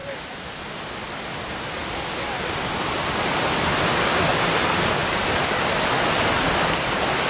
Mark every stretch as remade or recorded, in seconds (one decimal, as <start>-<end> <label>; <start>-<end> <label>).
0.0-0.6 remade; 0.6-1.8 recorded; 1.8-4.3 remade; 4.3-5.0 recorded; 5.0-7.3 remade